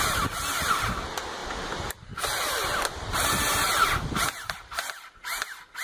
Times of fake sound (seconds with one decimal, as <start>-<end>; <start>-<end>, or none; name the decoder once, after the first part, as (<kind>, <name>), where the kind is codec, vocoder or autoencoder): none